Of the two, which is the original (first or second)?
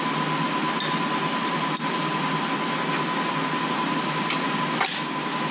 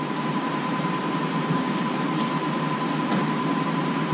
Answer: first